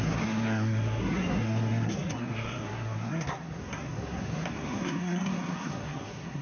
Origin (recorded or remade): remade